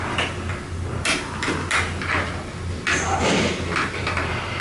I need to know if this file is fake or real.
real